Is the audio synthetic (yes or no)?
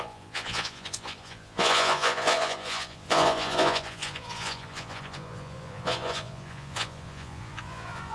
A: yes